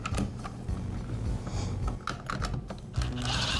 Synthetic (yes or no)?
no